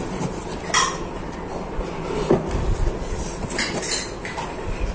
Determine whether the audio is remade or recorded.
recorded